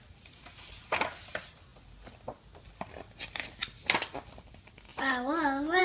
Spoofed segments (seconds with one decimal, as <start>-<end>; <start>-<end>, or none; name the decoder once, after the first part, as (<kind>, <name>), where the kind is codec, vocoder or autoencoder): none